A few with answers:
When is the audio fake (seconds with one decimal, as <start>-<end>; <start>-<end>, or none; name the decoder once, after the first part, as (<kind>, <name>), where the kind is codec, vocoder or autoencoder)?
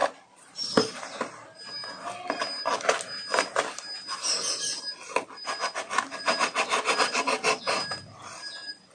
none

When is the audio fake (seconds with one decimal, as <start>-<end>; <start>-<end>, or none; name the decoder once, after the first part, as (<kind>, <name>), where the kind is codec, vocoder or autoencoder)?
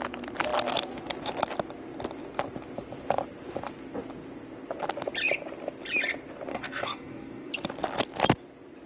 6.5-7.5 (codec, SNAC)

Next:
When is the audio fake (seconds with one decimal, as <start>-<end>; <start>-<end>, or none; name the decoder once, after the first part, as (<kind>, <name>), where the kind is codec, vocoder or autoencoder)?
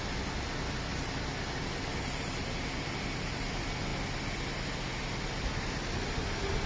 none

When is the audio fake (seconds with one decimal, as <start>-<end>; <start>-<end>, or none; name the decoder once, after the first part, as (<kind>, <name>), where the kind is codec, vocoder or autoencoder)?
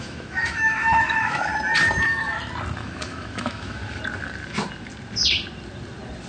0.0-1.5 (autoencoder, DAC-VAE); 2.8-3.8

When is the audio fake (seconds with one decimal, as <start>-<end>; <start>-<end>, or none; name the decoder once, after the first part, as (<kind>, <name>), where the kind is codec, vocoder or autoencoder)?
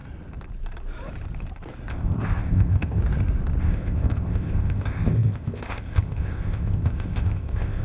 1.9-3.0 (codec, ZipCodec); 3.6-7.8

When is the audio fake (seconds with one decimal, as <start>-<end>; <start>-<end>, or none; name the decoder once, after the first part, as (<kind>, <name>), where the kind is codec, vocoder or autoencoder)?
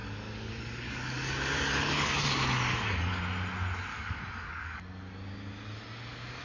0.0-3.2 (codec, DAC); 3.9-4.8